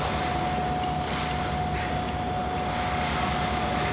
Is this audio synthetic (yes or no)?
no